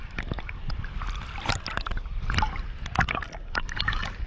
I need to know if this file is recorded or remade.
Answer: recorded